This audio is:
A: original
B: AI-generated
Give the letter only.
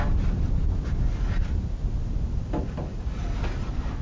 A